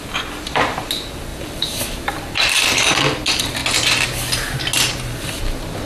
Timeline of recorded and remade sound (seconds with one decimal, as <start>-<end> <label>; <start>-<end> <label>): 0.0-1.3 recorded; 1.3-2.6 remade; 2.6-5.9 recorded